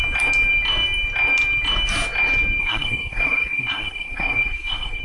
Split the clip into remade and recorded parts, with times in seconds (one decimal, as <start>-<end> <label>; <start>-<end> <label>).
0.0-2.6 recorded; 2.6-5.0 remade